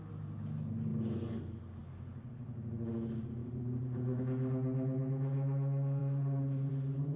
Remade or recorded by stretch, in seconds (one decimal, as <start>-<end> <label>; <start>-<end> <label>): 0.0-3.4 recorded; 3.4-4.2 remade; 4.2-6.0 recorded; 6.0-6.7 remade; 6.7-7.2 recorded

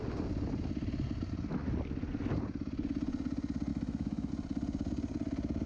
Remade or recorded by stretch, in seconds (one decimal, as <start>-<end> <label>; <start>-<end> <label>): 0.0-3.7 recorded; 3.7-4.3 remade; 4.3-5.7 recorded

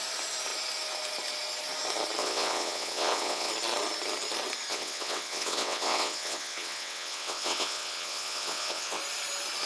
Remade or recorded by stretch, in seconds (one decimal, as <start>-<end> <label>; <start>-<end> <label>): 0.0-2.2 recorded; 2.2-3.5 remade; 3.5-4.7 recorded; 4.7-9.0 remade; 9.0-9.7 recorded

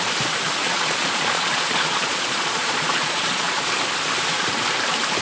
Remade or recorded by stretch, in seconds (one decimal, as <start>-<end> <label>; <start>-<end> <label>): 0.0-0.6 recorded; 0.6-3.7 remade; 3.7-5.2 recorded

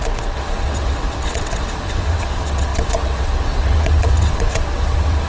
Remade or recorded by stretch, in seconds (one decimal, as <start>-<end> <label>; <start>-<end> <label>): 0.0-5.3 remade

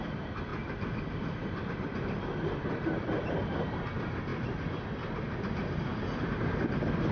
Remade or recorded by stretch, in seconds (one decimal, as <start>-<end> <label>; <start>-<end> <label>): 0.0-7.1 recorded

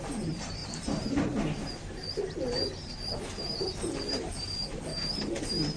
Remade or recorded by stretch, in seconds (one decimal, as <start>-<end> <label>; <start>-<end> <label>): 0.0-0.6 remade; 0.6-4.1 recorded; 4.1-4.9 remade; 4.9-5.8 recorded